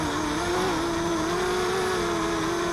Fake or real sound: real